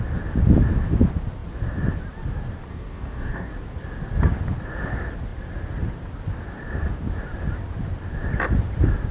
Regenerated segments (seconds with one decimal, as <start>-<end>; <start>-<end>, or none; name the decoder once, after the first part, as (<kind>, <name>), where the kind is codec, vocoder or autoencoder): 2.7-3.5 (codec, DAC)